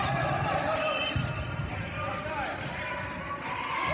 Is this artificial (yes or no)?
no